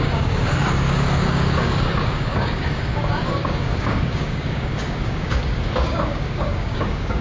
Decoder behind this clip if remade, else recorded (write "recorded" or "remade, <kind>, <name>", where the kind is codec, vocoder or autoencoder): remade, codec, DAC